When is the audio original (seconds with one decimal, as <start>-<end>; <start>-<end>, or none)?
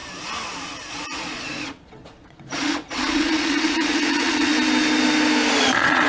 0.0-0.9; 4.5-5.6